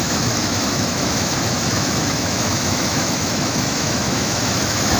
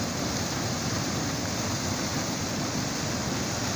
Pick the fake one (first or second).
first